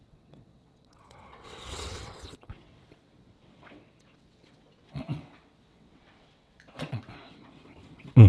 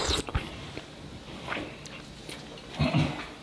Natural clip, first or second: second